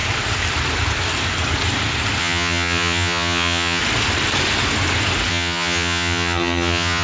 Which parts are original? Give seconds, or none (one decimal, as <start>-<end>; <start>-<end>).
0.0-2.2; 3.8-5.3